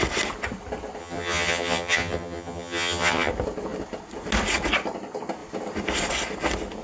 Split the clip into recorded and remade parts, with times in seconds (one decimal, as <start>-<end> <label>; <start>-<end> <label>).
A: 0.0-1.0 recorded; 1.0-3.3 remade; 3.3-6.8 recorded